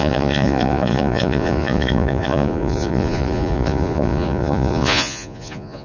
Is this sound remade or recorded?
remade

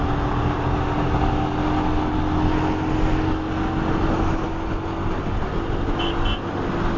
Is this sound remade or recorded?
recorded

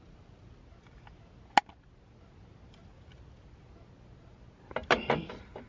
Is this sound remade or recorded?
recorded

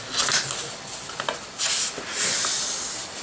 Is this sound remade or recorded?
recorded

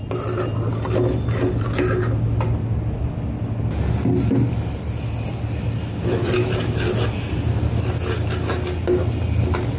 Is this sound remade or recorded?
recorded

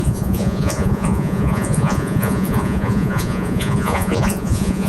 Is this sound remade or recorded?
remade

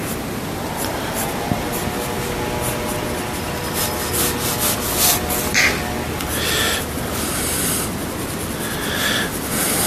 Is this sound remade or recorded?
recorded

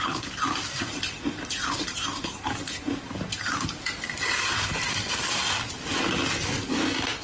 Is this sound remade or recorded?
recorded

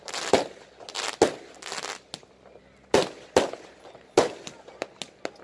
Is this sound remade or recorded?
recorded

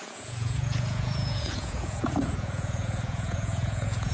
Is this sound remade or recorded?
remade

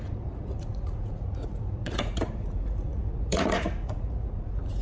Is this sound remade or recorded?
remade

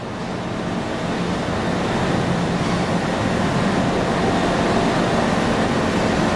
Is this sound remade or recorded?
recorded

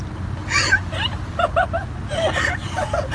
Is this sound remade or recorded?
recorded